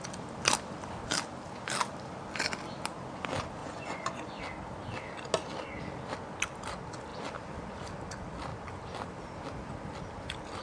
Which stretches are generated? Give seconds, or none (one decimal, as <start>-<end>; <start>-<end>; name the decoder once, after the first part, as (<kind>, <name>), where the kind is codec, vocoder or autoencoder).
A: 3.6-4.4 (vocoder, Vocos)